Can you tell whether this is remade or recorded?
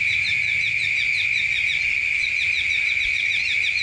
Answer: recorded